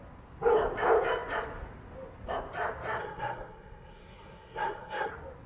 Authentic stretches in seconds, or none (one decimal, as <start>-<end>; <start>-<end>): 0.0-3.0; 5.1-5.5